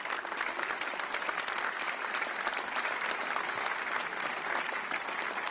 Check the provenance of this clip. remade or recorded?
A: remade